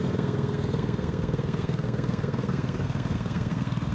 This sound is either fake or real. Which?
fake